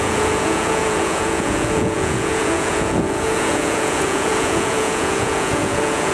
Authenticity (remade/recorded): remade